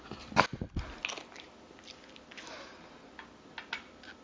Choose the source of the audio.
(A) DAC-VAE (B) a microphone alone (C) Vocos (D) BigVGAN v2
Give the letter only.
B